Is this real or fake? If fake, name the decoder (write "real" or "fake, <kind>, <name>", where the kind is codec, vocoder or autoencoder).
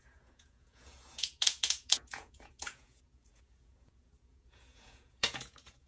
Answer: fake, vocoder, Vocos